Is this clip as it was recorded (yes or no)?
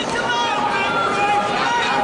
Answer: yes